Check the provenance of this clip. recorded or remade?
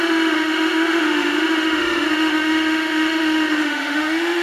remade